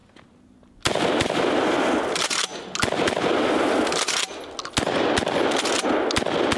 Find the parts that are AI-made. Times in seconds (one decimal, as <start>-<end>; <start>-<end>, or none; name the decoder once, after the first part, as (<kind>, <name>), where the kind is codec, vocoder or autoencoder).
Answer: none